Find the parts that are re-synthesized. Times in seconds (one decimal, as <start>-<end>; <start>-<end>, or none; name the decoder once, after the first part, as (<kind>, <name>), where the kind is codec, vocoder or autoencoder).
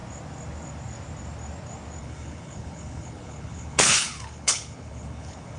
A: 2.0-5.6 (codec, HILCodec)